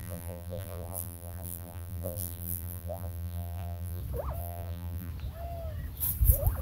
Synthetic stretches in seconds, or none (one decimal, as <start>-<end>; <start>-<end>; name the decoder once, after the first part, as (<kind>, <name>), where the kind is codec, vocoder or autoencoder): 0.0-4.0 (vocoder, BigVGAN v2); 4.4-5.1